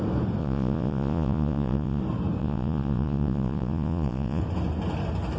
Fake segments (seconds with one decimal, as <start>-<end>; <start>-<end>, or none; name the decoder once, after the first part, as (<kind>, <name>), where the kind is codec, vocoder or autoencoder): 0.4-2.0 (vocoder, Vocos); 2.4-4.4